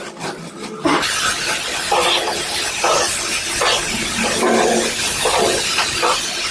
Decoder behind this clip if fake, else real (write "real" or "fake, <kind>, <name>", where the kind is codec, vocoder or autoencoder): real